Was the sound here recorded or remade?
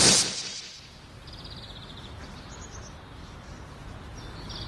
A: recorded